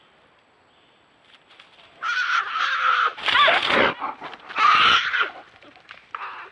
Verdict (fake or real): fake